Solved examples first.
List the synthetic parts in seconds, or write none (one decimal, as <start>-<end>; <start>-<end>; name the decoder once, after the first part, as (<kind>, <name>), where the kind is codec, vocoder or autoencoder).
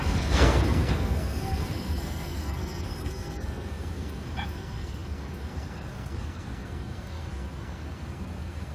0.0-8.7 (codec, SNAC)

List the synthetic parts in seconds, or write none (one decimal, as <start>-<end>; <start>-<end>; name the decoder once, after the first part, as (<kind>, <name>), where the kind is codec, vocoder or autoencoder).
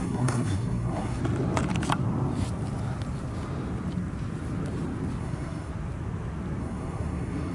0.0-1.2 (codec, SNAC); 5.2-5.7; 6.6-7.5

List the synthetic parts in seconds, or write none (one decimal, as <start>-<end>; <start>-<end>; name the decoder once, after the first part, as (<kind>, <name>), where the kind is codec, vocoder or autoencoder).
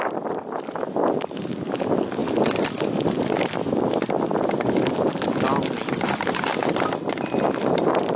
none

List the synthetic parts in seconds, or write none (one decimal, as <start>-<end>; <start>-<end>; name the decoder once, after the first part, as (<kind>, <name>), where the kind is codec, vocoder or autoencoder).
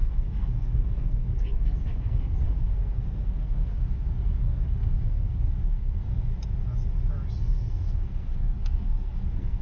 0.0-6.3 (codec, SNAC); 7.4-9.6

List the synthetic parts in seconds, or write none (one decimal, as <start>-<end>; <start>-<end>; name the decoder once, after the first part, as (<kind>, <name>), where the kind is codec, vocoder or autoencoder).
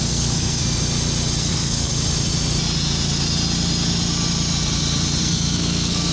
0.0-0.6 (codec, SNAC); 1.4-1.9; 5.2-6.1